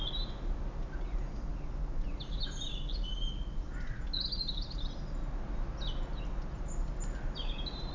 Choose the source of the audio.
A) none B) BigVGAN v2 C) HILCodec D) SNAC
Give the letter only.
A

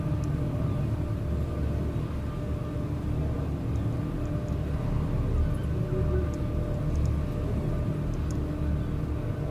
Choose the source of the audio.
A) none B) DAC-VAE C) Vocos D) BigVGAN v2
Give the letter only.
A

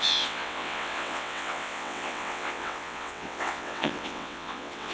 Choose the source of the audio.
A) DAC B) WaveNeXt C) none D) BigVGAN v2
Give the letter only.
B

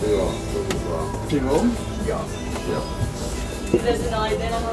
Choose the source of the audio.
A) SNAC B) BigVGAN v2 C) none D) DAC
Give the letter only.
C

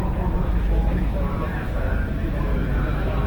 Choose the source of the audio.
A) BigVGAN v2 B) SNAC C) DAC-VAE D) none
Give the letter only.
C